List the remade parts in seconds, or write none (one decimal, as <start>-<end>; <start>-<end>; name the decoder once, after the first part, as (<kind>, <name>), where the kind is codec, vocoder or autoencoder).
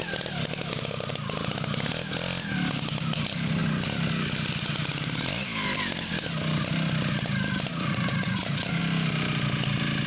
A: 7.7-8.8 (vocoder, Vocos)